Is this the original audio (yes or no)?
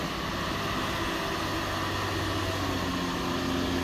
yes